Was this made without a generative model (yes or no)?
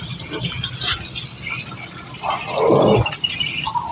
yes